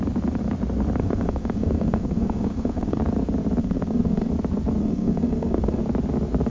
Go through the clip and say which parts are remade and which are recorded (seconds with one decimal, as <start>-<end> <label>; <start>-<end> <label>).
0.0-1.0 recorded; 1.0-3.0 remade; 3.0-3.6 recorded; 3.6-4.3 remade; 4.3-4.8 recorded; 4.8-5.8 remade; 5.8-6.5 recorded